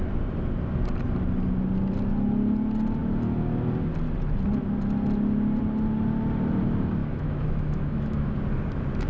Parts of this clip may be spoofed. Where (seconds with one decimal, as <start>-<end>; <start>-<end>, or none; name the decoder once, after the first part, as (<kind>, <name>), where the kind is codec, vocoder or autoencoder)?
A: 7.0-8.3 (autoencoder, DAC-VAE)

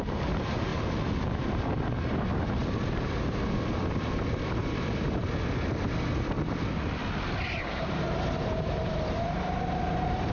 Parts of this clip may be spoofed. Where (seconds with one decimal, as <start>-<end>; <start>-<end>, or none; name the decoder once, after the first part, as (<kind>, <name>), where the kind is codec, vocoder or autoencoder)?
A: 0.0-0.7 (vocoder, BigVGAN v2); 1.3-2.6; 3.8-5.2; 7.5-10.3

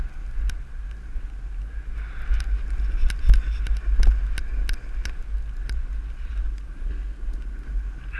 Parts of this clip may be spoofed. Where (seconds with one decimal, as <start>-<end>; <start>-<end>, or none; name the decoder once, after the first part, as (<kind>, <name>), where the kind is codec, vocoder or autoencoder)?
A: none

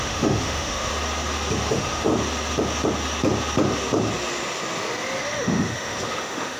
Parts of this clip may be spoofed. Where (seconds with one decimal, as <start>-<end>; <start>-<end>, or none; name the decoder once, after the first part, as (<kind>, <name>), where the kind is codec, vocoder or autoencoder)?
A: 0.0-0.9 (autoencoder, DAC-VAE); 1.7-2.1; 5.2-6.6

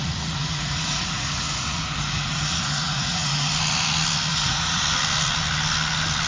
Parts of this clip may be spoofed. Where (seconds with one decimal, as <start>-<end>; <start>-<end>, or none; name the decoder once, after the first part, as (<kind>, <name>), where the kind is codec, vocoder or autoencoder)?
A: 0.0-3.5 (vocoder, Vocos); 4.3-4.8

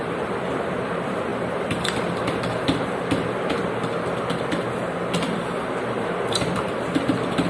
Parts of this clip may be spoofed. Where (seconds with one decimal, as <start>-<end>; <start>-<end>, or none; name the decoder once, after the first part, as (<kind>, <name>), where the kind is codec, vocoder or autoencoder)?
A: 0.0-1.3 (vocoder, BigVGAN v2); 5.8-7.5